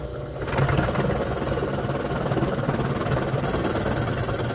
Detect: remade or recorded recorded